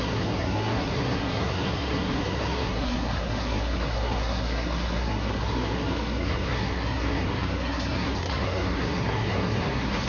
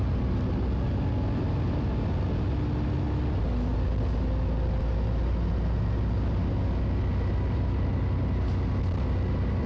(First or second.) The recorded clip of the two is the second